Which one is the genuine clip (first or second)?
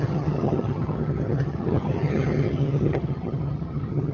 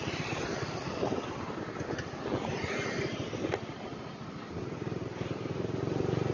second